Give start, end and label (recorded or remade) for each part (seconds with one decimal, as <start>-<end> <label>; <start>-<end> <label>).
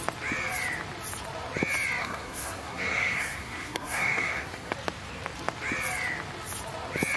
0.0-2.0 recorded; 2.0-4.7 remade; 4.7-7.2 recorded